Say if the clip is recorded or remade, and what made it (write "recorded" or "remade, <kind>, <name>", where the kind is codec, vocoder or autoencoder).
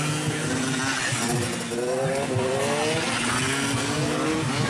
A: recorded